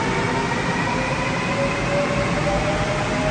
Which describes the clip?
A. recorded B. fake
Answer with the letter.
A